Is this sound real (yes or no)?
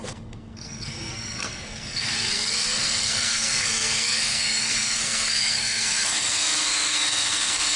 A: no